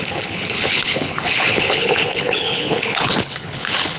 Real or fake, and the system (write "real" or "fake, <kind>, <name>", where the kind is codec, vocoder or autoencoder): fake, codec, HILCodec